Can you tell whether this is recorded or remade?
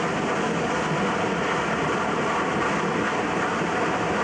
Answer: recorded